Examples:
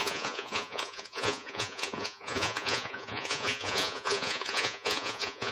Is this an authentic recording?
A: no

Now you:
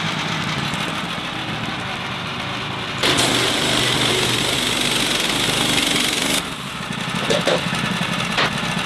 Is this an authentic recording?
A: yes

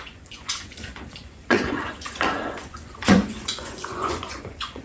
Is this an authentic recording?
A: no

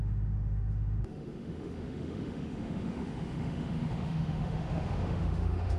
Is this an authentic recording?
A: no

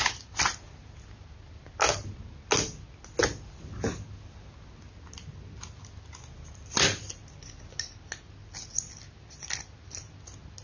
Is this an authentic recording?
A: yes